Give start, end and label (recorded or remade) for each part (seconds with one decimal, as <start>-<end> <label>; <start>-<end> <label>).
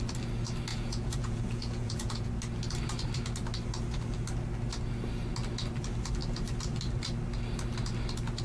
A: 0.0-0.7 recorded; 0.7-2.3 remade; 2.3-8.4 recorded